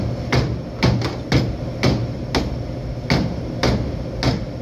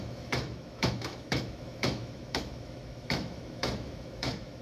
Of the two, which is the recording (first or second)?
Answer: first